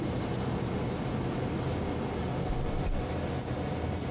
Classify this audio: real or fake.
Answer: real